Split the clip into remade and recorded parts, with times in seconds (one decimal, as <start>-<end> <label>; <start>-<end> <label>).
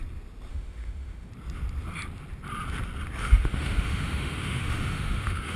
0.0-0.5 recorded; 0.5-1.3 remade; 1.3-3.2 recorded; 3.2-5.6 remade